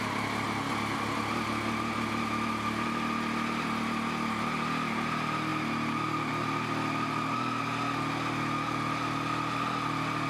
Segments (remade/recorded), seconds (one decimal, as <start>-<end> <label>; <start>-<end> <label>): 0.0-10.3 recorded

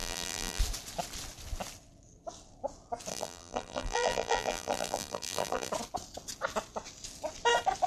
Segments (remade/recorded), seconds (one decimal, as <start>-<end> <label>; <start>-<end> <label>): 0.0-0.6 remade; 0.6-3.1 recorded; 3.1-5.7 remade; 5.7-7.9 recorded

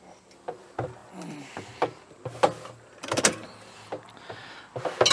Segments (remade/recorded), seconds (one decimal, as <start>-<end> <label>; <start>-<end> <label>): 0.0-5.1 recorded

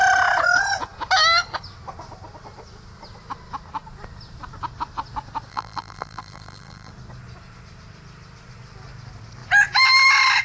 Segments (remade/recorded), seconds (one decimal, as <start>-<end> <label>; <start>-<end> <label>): 0.0-5.5 recorded; 5.5-6.9 remade; 6.9-10.4 recorded

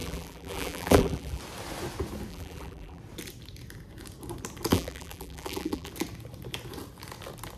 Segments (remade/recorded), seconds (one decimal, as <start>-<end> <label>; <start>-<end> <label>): 0.0-1.4 remade; 1.4-2.3 recorded; 2.3-3.0 remade; 3.0-4.7 recorded; 4.7-5.9 remade; 5.9-7.6 recorded